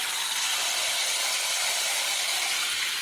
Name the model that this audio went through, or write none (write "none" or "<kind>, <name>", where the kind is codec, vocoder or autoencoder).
none